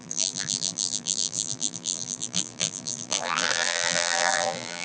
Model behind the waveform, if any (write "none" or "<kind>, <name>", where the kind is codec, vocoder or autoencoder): vocoder, BigVGAN v2